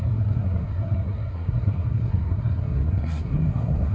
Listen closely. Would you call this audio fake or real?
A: fake